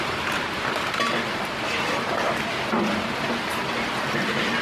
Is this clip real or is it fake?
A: real